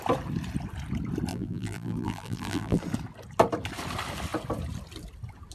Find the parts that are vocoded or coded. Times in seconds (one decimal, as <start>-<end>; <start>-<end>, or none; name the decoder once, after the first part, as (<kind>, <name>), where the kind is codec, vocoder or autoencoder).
1.3-2.8 (vocoder, BigVGAN v2)

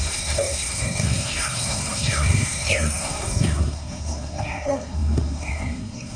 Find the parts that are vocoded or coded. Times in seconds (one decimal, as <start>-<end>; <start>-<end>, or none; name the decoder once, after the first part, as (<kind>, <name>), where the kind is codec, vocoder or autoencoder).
0.0-6.2 (codec, SNAC)

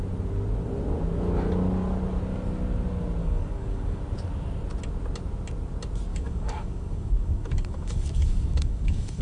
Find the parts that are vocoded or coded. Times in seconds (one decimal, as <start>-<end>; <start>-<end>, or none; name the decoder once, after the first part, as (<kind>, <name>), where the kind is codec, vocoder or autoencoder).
3.2-4.0 (codec, DAC); 6.1-9.2

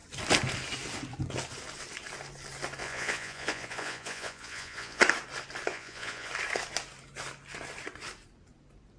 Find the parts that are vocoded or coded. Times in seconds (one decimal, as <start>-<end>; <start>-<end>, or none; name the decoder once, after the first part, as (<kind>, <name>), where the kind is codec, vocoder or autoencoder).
2.8-5.0 (vocoder, Vocos); 5.7-6.3

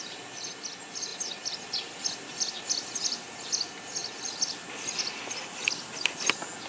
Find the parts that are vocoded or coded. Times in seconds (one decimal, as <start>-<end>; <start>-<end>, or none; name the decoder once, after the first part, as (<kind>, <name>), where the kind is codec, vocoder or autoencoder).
none

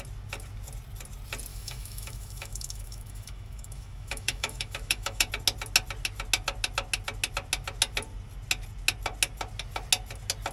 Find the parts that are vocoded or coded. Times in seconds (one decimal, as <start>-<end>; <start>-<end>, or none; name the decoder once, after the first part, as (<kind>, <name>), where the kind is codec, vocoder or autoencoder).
1.5-5.3 (autoencoder, DAC-VAE)

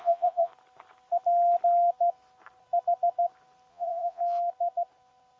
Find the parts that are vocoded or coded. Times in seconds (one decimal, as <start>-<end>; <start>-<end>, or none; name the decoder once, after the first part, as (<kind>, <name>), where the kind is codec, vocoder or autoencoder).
0.0-0.5 (vocoder, Vocos); 3.7-4.2